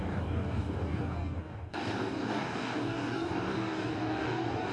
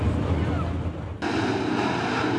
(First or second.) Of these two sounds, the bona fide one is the second